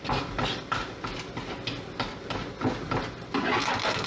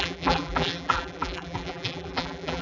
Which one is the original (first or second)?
first